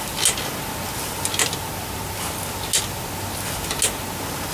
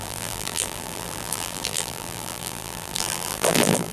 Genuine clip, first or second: first